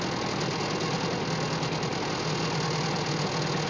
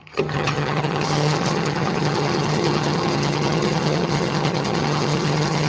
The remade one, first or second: second